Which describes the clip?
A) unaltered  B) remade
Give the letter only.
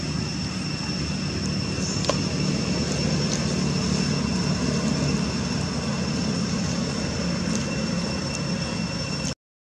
A